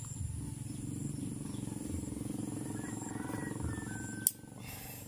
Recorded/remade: recorded